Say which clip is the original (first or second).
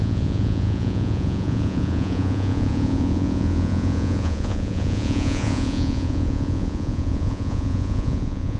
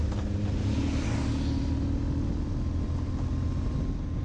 second